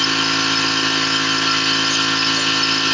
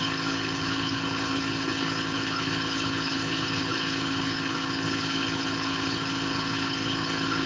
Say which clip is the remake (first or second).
second